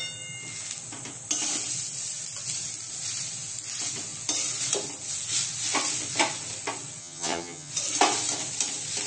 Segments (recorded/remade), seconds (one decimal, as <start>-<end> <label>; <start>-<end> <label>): 0.0-7.0 recorded; 7.0-7.7 remade; 7.7-9.1 recorded